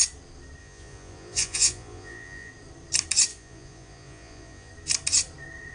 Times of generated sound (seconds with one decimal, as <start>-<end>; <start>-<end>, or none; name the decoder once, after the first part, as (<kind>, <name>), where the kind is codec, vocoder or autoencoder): 0.6-2.5 (vocoder, Vocos); 3.3-4.7